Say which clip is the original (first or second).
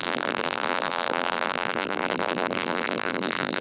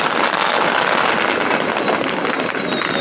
second